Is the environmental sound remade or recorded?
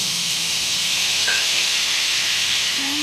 remade